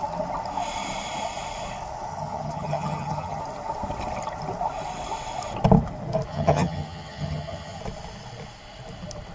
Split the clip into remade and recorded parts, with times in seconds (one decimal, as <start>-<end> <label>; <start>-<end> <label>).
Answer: 0.0-2.1 recorded; 2.1-3.4 remade; 3.4-6.3 recorded; 6.3-7.8 remade; 7.8-9.3 recorded